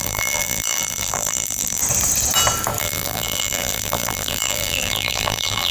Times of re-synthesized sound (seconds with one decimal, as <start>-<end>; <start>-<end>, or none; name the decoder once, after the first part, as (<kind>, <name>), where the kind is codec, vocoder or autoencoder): 0.0-1.8 (vocoder, BigVGAN v2); 2.8-5.7